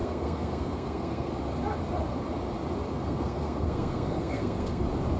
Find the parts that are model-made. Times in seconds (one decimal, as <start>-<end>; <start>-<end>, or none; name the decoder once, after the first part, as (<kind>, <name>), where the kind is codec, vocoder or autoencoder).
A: 0.0-1.3 (codec, SNAC); 2.9-4.8